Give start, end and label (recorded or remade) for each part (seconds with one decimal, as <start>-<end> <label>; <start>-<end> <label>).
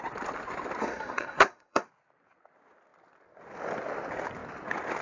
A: 0.0-0.8 recorded; 0.8-1.9 remade; 1.9-5.0 recorded